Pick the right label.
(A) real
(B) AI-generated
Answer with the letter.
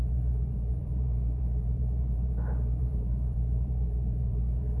B